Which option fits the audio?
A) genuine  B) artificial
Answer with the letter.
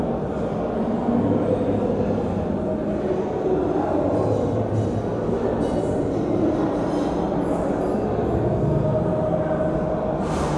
A